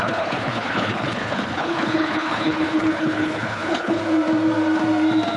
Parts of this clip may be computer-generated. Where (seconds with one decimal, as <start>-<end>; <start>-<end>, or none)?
0.0-4.0